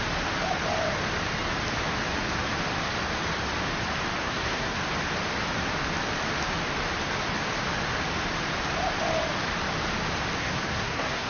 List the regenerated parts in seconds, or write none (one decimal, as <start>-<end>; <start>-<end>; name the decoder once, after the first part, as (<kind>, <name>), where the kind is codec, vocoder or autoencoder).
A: 4.2-4.8 (codec, SNAC); 10.4-11.3